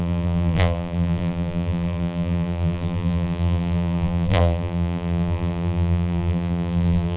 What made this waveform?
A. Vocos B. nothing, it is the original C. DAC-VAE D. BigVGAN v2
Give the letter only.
D